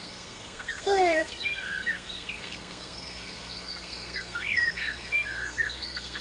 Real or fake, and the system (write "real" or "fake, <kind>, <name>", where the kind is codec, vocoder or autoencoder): fake, codec, SNAC